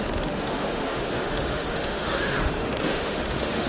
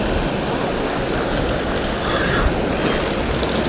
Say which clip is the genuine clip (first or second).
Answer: second